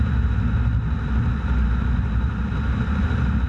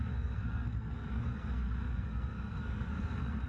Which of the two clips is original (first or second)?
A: first